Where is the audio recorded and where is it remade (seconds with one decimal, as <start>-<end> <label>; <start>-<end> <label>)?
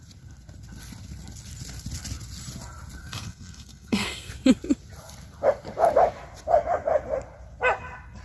0.0-3.0 recorded; 3.0-4.3 remade; 4.3-8.2 recorded